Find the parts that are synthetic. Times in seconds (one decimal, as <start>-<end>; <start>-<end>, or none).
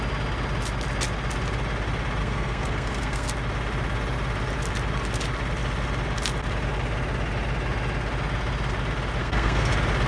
2.2-3.3; 9.2-9.7